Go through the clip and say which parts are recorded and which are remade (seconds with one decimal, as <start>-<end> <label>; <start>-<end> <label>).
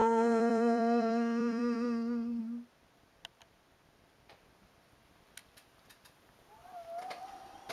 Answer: 0.0-2.4 remade; 2.4-6.6 recorded; 6.6-7.7 remade